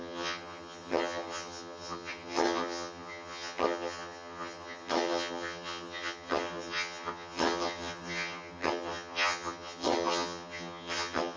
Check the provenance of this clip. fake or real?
fake